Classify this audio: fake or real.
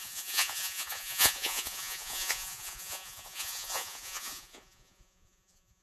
fake